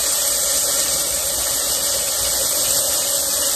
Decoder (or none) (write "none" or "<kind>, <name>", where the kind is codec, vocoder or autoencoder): none